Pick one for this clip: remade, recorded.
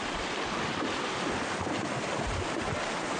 recorded